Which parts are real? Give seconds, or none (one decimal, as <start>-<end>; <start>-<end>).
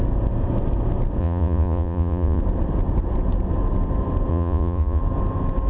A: 0.0-1.2; 2.4-4.3; 5.0-5.7